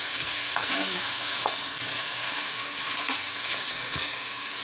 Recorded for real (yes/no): no